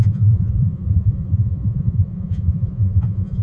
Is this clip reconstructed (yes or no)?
yes